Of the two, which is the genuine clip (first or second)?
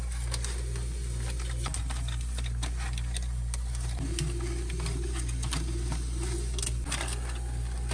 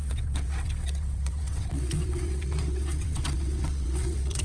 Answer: first